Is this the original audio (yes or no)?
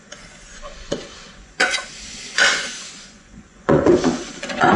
no